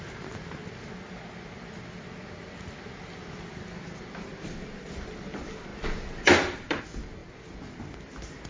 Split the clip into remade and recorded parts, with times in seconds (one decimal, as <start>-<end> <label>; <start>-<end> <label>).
0.0-8.5 recorded